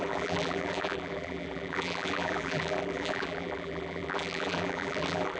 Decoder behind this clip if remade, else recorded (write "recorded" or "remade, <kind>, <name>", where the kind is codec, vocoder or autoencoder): remade, vocoder, BigVGAN v2